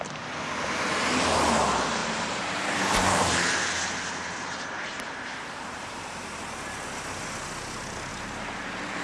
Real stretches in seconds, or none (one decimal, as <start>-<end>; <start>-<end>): 0.0-2.0; 5.9-8.1